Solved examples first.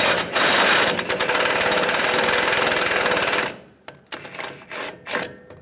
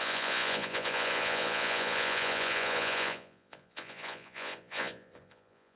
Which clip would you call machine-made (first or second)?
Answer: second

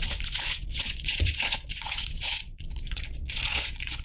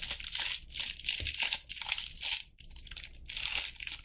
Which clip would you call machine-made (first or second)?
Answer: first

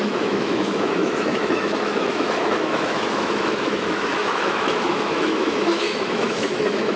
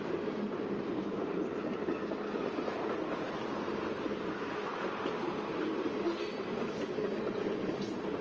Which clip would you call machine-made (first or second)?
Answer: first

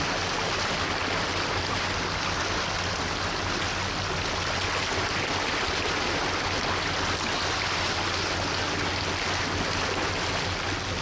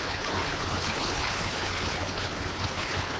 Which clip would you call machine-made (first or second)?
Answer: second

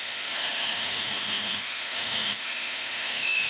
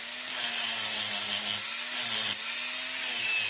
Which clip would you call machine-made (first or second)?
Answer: first